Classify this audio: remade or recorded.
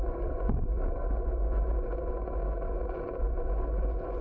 remade